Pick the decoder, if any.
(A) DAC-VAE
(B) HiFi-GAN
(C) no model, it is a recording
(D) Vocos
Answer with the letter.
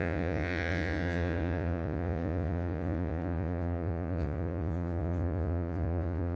D